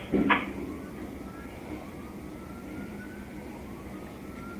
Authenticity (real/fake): real